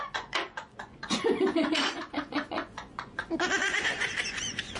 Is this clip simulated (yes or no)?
yes